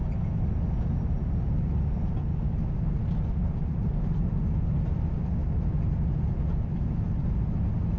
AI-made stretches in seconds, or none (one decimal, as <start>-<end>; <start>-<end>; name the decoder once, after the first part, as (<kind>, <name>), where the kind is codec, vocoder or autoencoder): none